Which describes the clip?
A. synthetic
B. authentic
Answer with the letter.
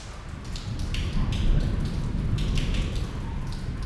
B